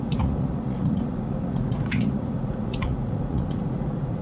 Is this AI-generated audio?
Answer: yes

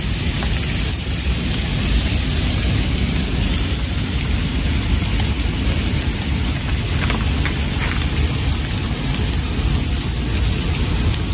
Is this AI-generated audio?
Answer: no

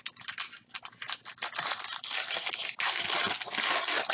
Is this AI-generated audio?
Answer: no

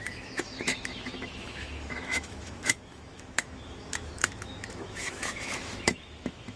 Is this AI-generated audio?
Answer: yes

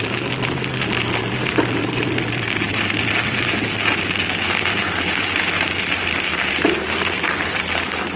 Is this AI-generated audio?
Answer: no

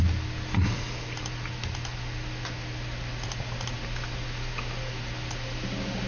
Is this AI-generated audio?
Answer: no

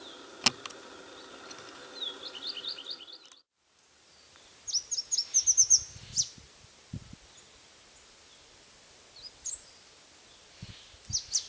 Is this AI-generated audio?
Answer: no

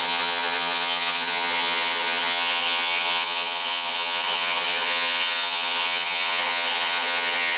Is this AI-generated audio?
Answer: yes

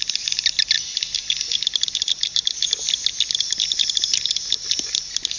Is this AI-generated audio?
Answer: no